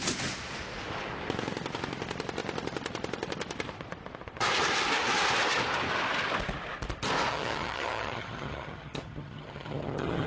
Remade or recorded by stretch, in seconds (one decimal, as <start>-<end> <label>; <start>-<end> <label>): 0.0-7.3 recorded; 7.3-10.3 remade

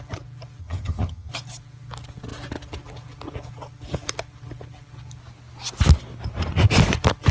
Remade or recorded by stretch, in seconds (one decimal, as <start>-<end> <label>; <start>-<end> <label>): 0.0-0.6 recorded; 0.6-1.3 remade; 1.3-7.3 recorded

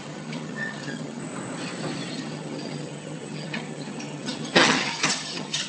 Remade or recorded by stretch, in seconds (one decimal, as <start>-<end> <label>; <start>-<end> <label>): 0.0-1.2 remade; 1.2-2.1 recorded; 2.1-5.7 remade

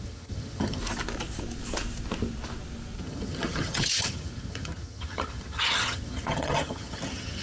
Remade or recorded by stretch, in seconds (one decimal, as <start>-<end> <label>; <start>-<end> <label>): 0.0-0.8 remade; 0.8-3.0 recorded; 3.0-7.4 remade

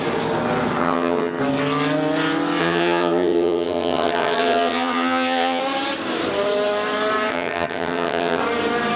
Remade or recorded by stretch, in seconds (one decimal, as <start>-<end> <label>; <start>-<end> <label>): 0.0-0.8 recorded; 0.8-1.4 remade; 1.4-2.6 recorded; 2.6-5.6 remade; 5.6-7.3 recorded; 7.3-8.4 remade; 8.4-9.0 recorded

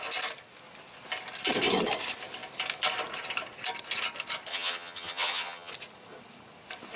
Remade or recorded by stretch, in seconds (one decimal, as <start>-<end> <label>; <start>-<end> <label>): 0.0-4.5 recorded; 4.5-5.7 remade; 5.7-7.0 recorded

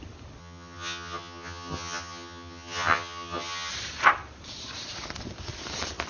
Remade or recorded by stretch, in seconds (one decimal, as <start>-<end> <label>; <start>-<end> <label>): 0.0-0.4 recorded; 0.4-3.7 remade; 3.7-6.1 recorded